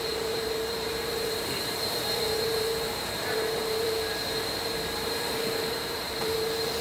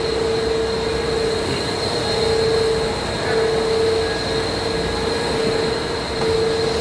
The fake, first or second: first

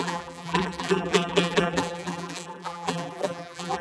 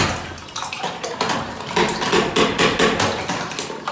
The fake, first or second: first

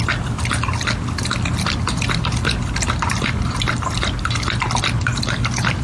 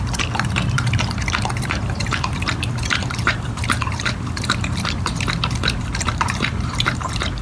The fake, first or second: second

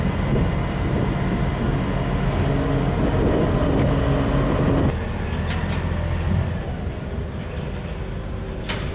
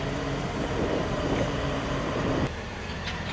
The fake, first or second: second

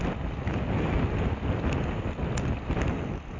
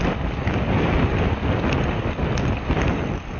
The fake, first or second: second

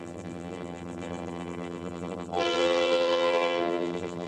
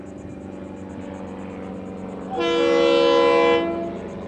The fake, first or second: first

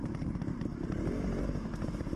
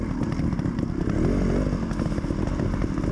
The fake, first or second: first